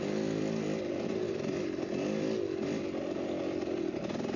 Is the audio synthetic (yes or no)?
no